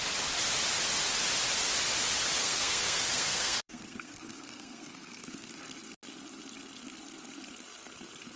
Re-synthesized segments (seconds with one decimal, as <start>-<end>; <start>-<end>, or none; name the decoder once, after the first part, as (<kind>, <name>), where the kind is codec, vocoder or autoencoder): 2.4-5.5 (codec, SNAC)